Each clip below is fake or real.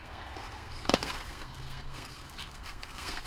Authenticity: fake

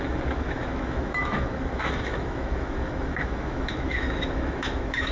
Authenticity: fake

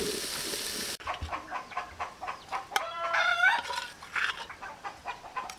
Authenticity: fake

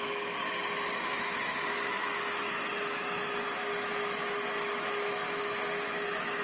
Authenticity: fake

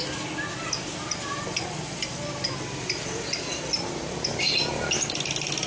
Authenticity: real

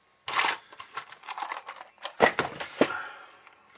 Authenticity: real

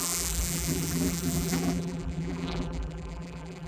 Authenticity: fake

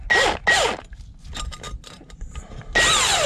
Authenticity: real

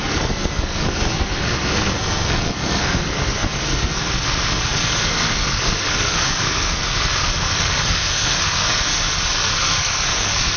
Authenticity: fake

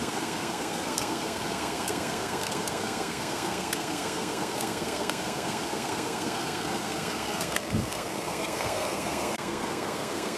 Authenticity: fake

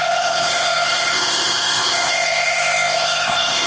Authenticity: fake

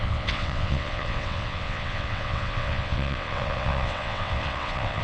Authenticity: fake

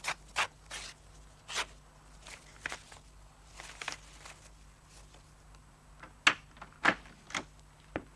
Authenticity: real